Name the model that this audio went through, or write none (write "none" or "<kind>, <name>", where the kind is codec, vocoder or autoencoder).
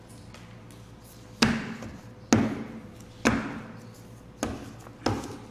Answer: none